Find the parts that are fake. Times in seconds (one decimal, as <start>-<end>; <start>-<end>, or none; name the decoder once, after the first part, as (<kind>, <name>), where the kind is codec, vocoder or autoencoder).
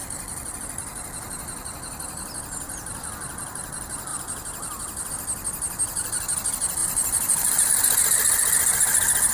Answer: 0.0-0.6 (vocoder, BigVGAN v2); 4.1-5.1; 6.8-7.7